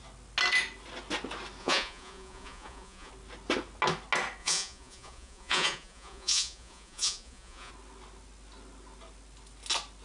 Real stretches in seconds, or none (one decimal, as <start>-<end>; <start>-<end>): 0.0-1.6; 3.1-4.4; 7.7-10.0